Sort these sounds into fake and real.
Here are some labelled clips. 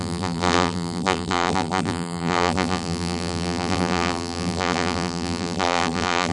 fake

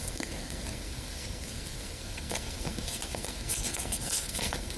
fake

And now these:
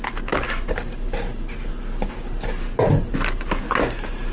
real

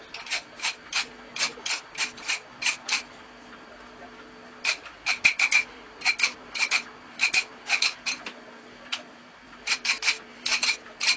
fake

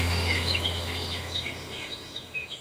fake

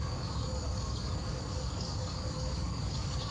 fake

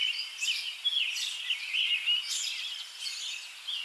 real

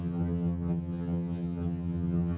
fake